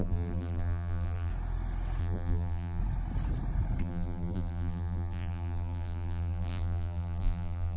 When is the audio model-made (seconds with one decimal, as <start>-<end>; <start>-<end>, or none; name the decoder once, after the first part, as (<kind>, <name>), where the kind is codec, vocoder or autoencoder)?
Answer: 0.0-1.3 (vocoder, BigVGAN v2); 2.0-2.8; 3.8-7.8